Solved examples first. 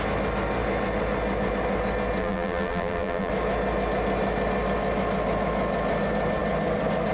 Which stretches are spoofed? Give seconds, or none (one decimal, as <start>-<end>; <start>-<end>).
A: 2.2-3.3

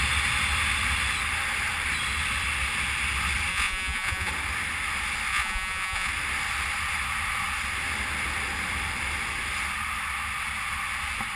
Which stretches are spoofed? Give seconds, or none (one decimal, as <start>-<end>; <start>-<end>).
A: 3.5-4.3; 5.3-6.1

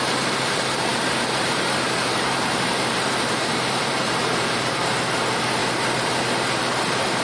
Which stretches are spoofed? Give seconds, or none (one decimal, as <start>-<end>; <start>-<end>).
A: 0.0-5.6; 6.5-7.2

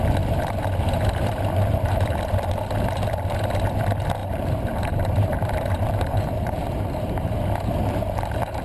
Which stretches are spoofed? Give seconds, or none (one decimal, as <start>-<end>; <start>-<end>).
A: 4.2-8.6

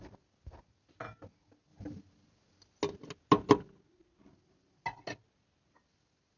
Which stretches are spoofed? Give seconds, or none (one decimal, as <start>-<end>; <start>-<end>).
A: none

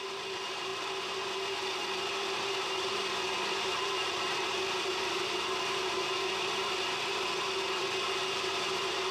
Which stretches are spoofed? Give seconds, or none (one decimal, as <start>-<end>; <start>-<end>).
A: 0.0-9.1